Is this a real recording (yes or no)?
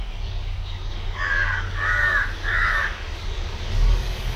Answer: no